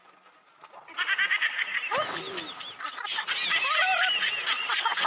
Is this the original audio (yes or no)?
yes